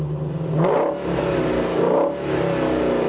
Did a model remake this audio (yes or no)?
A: no